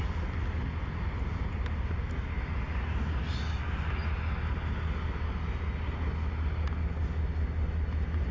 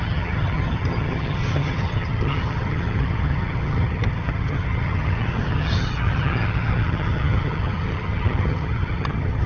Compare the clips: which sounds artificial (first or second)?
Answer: second